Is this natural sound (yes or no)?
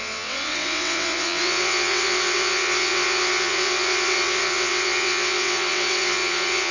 no